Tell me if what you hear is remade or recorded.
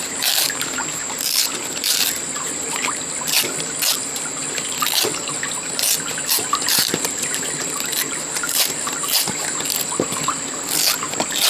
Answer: recorded